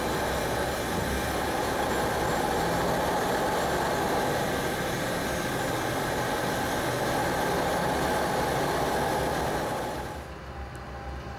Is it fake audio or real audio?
real